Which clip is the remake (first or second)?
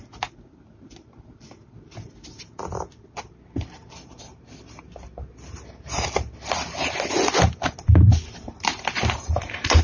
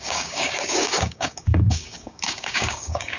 second